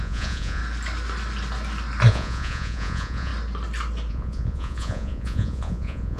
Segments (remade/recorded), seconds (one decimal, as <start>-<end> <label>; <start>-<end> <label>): 0.0-0.6 remade; 0.6-2.1 recorded; 2.1-3.3 remade; 3.3-4.1 recorded; 4.1-6.2 remade